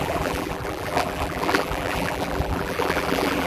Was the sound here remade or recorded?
remade